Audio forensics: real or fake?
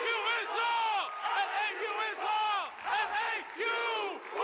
real